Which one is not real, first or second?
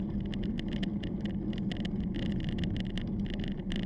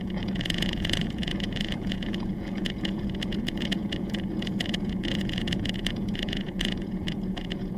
second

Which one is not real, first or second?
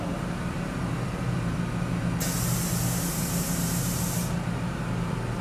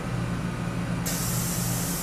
first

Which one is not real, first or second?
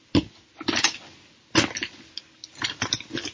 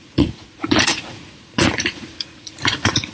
second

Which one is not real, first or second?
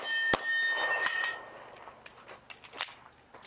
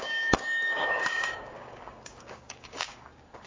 second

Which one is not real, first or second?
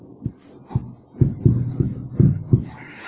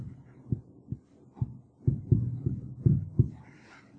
second